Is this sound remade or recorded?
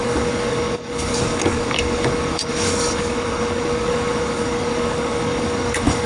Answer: remade